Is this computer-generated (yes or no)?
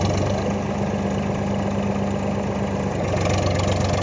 no